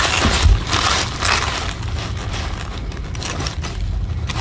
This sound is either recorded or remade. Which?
recorded